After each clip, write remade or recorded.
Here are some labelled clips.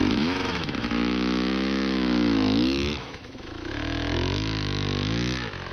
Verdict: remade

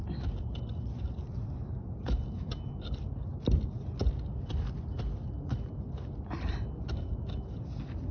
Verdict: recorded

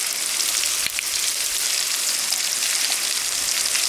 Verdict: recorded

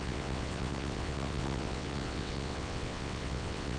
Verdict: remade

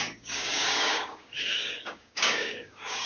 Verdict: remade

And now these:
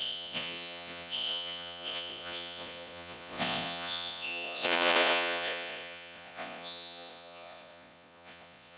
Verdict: remade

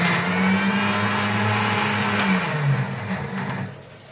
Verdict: recorded